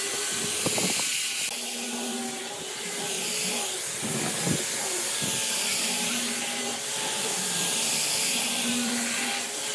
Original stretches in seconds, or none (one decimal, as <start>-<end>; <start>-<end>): 0.0-6.9